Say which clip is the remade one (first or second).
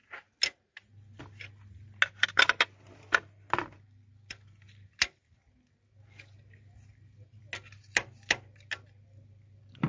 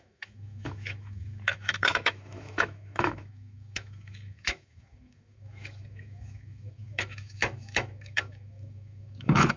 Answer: second